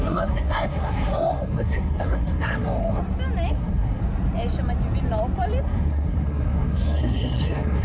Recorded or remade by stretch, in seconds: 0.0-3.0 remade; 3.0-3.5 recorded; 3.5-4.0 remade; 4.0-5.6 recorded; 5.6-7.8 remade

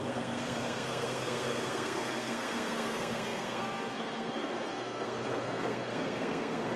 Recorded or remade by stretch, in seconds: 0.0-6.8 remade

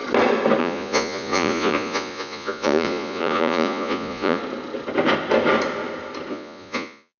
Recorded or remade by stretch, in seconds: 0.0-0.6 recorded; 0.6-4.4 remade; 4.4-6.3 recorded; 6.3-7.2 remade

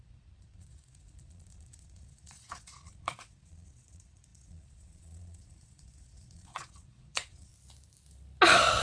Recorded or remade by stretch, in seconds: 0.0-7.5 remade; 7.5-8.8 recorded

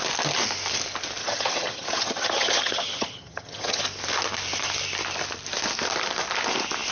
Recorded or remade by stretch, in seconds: 0.0-1.2 recorded; 1.2-3.8 remade; 3.8-6.9 recorded

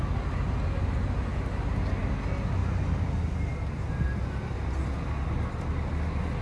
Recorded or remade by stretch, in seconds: 0.0-6.4 recorded